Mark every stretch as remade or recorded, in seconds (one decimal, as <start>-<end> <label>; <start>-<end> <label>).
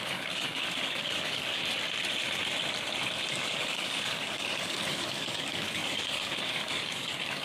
0.0-1.6 remade; 1.6-3.3 recorded; 3.3-7.4 remade